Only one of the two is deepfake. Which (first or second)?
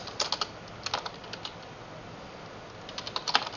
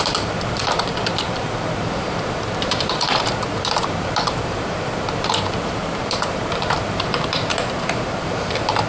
second